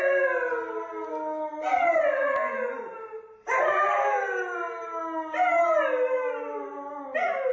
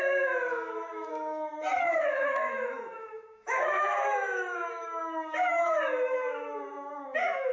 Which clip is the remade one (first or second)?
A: second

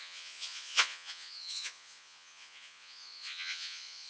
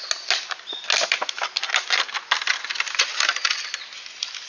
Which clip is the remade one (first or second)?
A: first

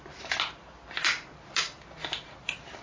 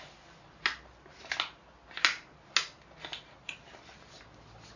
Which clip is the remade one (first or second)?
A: first